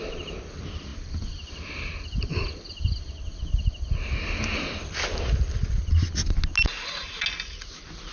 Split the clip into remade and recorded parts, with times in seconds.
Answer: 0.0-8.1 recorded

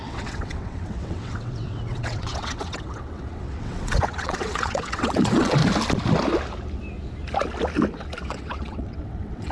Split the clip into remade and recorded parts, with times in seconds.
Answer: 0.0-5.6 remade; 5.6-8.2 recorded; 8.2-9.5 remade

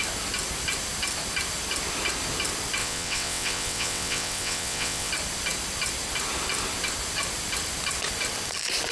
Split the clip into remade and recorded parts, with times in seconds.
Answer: 0.0-2.8 recorded; 2.8-5.1 remade; 5.1-8.9 recorded

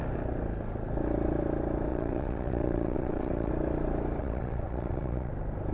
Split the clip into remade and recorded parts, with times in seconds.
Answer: 0.0-1.9 recorded; 1.9-3.5 remade; 3.5-4.2 recorded; 4.2-5.3 remade; 5.3-5.7 recorded

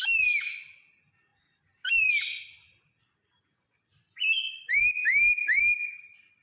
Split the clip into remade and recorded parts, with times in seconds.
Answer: 0.0-6.4 recorded

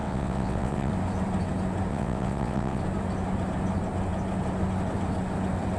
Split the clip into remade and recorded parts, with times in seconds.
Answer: 0.0-0.9 remade; 0.9-1.9 recorded; 1.9-2.8 remade; 2.8-5.8 recorded